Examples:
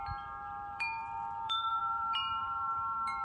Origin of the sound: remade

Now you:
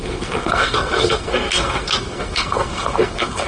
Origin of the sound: remade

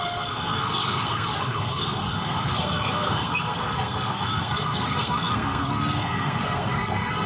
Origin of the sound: remade